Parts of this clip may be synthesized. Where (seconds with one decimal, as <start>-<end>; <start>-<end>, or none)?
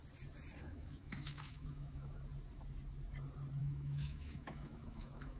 0.6-2.2; 3.6-5.4